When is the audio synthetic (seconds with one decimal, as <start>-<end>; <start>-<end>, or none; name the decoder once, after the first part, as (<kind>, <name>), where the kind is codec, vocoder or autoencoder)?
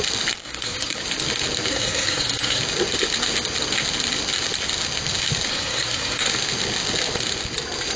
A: 0.4-1.0 (codec, SNAC); 1.7-2.6; 5.5-6.3